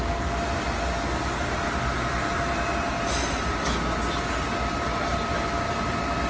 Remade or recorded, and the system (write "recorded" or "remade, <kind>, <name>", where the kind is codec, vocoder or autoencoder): recorded